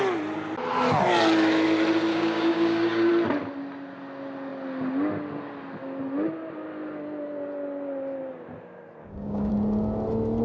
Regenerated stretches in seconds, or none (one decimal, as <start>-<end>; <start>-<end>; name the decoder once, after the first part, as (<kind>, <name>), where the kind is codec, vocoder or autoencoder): 2.1-3.1 (codec, DAC); 9.0-9.5